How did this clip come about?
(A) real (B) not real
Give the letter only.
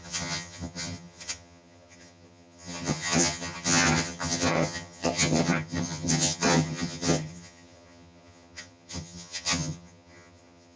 B